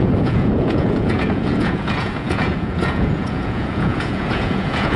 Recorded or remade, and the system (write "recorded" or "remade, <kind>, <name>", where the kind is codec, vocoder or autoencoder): remade, vocoder, Vocos